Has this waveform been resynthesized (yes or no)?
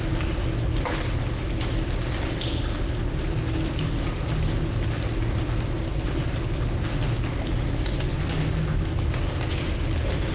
no